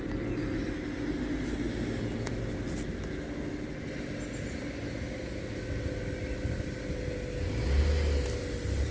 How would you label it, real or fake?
real